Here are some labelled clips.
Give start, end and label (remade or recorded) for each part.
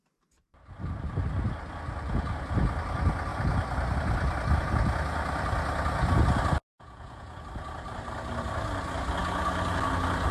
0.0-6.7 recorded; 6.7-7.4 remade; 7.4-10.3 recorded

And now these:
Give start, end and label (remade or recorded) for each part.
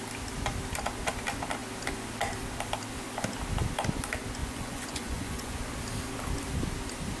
0.0-4.4 recorded; 4.4-5.6 remade; 5.6-7.2 recorded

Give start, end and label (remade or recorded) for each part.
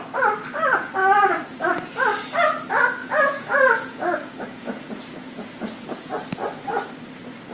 0.0-3.0 recorded; 3.0-6.1 remade; 6.1-7.5 recorded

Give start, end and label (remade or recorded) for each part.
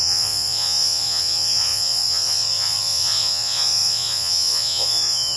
0.0-5.4 remade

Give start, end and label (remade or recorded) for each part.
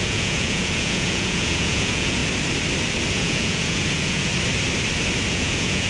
0.0-2.2 remade; 2.2-3.1 recorded; 3.1-4.3 remade; 4.3-5.3 recorded; 5.3-5.9 remade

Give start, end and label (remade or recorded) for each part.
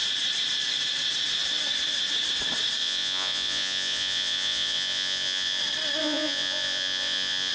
0.0-2.8 recorded; 2.8-5.6 remade; 5.6-6.0 recorded; 6.0-7.5 remade